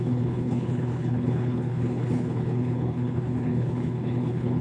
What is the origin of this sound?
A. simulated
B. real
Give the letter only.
A